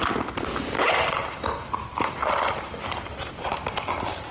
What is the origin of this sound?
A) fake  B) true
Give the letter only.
B